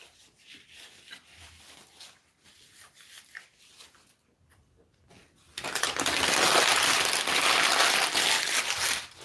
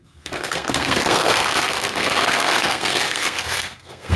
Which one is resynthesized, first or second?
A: second